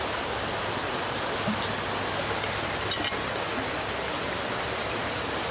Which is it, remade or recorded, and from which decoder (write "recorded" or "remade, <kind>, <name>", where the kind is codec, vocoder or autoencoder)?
recorded